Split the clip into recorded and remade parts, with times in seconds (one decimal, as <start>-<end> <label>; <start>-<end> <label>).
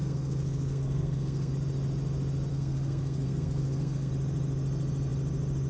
0.0-1.5 remade; 1.5-2.5 recorded; 2.5-4.1 remade; 4.1-5.7 recorded